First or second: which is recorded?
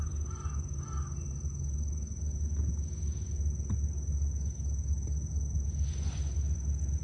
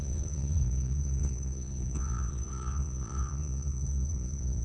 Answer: first